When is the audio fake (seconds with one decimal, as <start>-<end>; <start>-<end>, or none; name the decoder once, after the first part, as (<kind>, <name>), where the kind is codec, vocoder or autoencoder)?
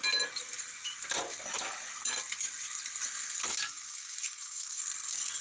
3.5-4.8 (autoencoder, DAC-VAE)